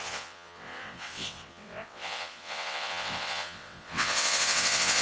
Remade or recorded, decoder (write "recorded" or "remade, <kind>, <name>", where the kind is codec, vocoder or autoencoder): remade, vocoder, WaveNeXt